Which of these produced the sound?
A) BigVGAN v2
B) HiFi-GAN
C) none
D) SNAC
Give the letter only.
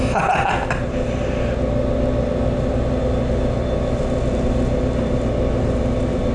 C